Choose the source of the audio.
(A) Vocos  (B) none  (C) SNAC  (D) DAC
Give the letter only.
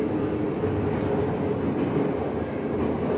B